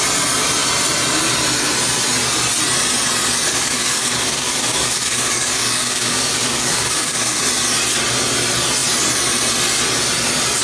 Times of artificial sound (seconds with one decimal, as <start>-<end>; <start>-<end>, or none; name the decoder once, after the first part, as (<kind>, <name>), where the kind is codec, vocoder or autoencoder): 3.5-7.4 (codec, DAC)